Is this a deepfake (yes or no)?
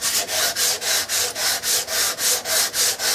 no